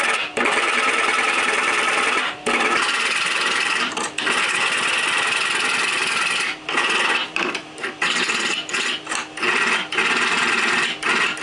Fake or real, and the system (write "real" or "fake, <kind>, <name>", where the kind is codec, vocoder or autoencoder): fake, vocoder, BigVGAN v2